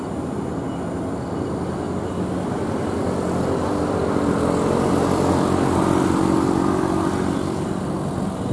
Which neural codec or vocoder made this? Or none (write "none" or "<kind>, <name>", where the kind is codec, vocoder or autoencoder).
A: none